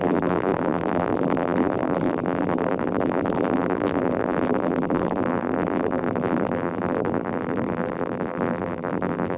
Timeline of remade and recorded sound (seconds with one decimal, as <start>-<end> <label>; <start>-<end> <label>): 0.0-9.4 remade